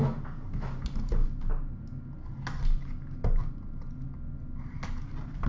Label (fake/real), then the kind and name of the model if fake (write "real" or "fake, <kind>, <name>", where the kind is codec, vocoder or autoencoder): real